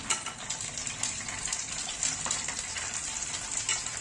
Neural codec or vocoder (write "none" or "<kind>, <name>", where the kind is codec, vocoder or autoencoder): none